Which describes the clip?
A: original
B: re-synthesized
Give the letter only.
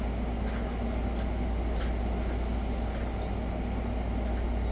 A